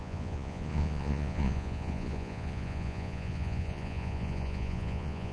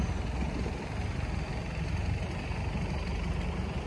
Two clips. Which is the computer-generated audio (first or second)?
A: first